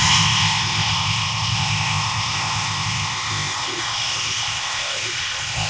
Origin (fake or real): fake